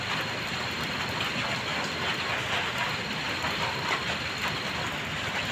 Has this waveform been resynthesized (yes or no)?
no